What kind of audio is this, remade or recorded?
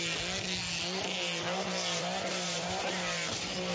recorded